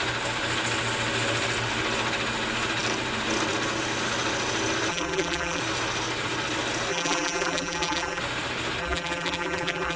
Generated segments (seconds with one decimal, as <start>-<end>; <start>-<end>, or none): 4.9-5.6; 6.9-8.2; 8.8-10.0